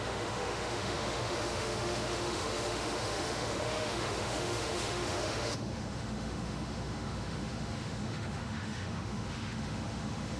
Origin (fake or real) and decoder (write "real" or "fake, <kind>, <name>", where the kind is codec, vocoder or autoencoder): fake, autoencoder, DAC-VAE